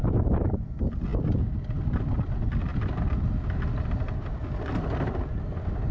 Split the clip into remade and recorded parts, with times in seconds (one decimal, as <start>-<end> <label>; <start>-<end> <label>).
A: 0.0-5.9 recorded